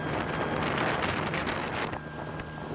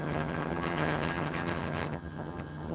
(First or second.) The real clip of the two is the first